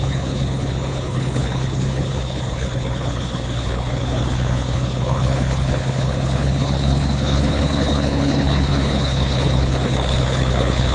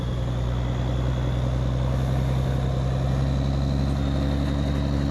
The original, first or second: second